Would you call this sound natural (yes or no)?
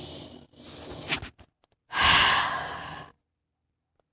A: yes